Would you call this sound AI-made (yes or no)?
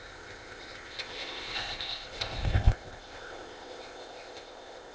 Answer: yes